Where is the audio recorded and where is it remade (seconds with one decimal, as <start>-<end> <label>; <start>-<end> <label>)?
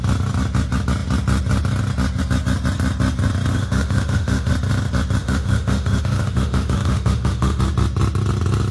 0.0-3.5 recorded; 3.5-4.5 remade; 4.5-5.2 recorded; 5.2-7.6 remade; 7.6-8.7 recorded